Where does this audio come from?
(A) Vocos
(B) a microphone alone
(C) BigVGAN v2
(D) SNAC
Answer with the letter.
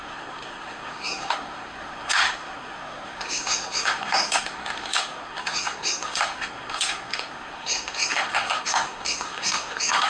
D